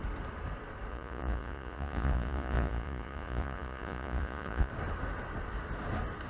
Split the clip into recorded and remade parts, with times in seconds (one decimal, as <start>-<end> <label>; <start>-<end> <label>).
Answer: 0.0-0.9 recorded; 0.9-4.7 remade; 4.7-6.3 recorded